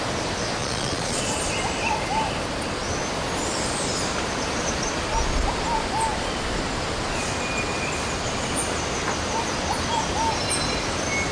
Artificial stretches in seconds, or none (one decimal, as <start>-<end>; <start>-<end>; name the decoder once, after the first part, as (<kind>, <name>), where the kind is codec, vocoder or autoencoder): 0.6-1.2 (vocoder, Vocos)